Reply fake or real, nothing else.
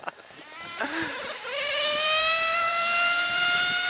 fake